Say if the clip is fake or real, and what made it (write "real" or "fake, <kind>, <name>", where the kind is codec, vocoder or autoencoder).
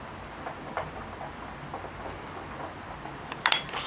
fake, vocoder, BigVGAN v2